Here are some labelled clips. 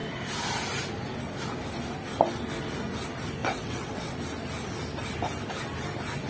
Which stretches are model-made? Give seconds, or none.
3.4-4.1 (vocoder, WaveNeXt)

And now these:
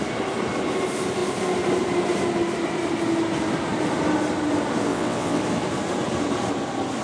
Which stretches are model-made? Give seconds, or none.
4.9-5.4 (vocoder, WaveNeXt)

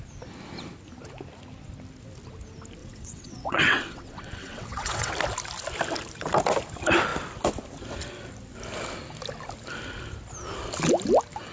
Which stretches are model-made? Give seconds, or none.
2.8-5.1 (vocoder, WaveNeXt)